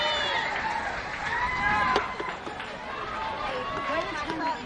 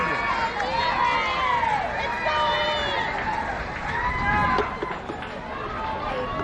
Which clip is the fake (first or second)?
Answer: first